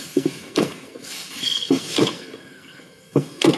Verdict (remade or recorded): remade